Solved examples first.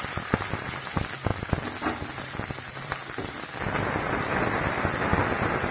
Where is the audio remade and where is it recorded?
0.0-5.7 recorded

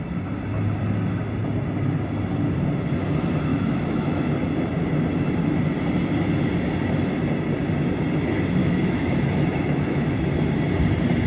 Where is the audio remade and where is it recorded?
0.0-3.5 recorded; 3.5-4.3 remade; 4.3-8.6 recorded; 8.6-10.2 remade; 10.2-11.3 recorded

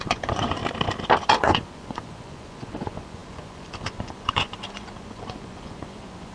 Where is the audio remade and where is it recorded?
0.0-0.6 remade; 0.6-1.2 recorded; 1.2-6.3 remade